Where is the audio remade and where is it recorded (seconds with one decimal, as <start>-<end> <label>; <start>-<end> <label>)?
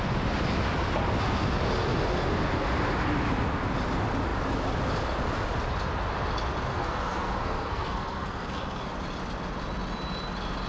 0.0-6.7 recorded; 6.7-8.9 remade; 8.9-10.7 recorded